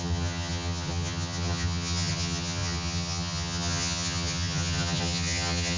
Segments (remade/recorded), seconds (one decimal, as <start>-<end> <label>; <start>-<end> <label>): 0.0-5.8 remade